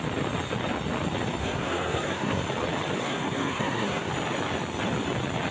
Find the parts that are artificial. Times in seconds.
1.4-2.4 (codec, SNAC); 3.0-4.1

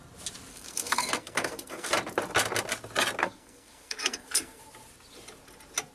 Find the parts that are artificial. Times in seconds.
0.5-1.9 (codec, SNAC); 3.2-4.6

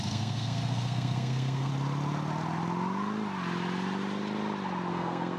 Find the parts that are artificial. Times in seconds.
0.0-1.7 (codec, SNAC); 4.9-5.4